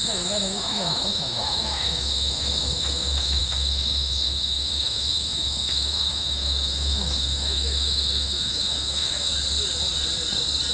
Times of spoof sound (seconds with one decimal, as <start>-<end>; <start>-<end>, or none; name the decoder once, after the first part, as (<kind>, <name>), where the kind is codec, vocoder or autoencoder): 0.0-9.3 (autoencoder, DAC-VAE)